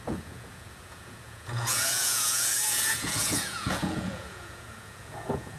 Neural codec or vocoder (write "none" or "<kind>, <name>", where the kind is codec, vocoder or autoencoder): vocoder, Vocos